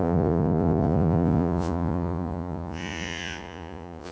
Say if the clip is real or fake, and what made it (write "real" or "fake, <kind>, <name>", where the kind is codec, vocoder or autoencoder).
fake, vocoder, Vocos